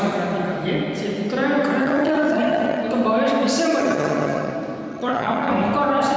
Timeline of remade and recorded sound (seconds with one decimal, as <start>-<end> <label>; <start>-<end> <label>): 0.0-1.8 recorded; 1.8-2.8 remade; 2.8-3.8 recorded; 3.8-4.5 remade; 4.5-4.9 recorded; 4.9-5.5 remade; 5.5-6.2 recorded